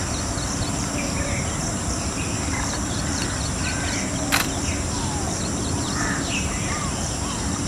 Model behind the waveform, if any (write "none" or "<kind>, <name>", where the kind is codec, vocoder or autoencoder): vocoder, BigVGAN v2